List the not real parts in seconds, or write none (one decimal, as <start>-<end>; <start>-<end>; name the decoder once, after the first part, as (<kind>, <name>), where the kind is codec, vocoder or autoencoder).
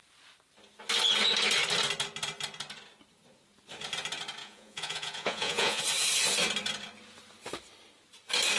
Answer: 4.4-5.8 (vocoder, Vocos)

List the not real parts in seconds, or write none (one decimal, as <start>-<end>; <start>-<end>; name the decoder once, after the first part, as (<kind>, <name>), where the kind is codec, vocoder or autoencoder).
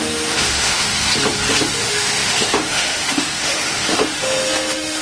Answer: 0.0-1.1 (autoencoder, DAC-VAE); 1.8-5.0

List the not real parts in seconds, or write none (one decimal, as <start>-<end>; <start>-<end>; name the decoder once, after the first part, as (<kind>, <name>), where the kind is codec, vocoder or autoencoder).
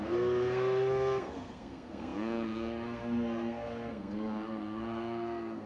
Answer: 0.0-5.7 (codec, SNAC)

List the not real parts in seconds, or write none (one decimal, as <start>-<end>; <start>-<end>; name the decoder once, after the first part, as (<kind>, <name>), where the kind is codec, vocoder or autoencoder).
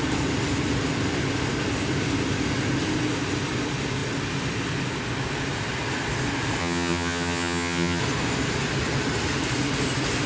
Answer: 6.6-8.0 (vocoder, HiFi-GAN)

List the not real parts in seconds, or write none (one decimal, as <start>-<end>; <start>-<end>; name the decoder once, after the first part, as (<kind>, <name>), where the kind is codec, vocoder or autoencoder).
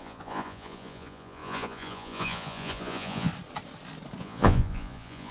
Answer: 0.0-3.3 (vocoder, Vocos); 4.2-5.3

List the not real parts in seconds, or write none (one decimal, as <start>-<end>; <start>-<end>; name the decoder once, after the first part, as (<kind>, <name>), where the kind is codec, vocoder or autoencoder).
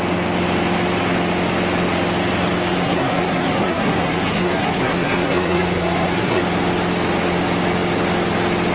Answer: 2.7-6.4 (codec, SNAC)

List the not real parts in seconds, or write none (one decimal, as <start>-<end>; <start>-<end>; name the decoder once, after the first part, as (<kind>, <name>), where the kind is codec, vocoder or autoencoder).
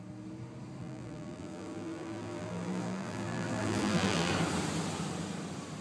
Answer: 0.8-4.3 (vocoder, BigVGAN v2)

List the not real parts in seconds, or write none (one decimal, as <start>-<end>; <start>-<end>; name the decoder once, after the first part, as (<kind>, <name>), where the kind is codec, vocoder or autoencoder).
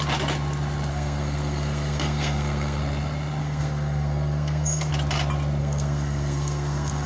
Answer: 0.9-2.8 (codec, SNAC); 3.4-4.9; 5.6-7.1